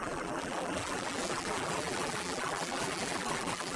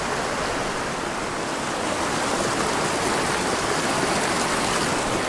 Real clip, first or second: second